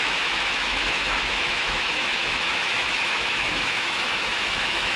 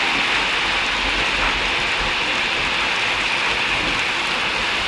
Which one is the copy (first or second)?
first